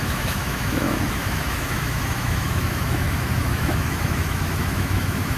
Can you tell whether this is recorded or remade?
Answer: remade